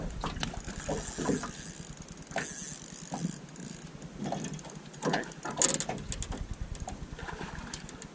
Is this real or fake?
real